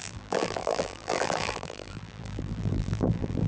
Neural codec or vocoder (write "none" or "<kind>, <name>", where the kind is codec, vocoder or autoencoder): vocoder, BigVGAN v2